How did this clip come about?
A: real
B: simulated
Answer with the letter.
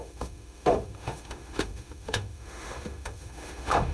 B